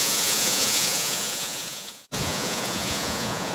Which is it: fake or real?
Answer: fake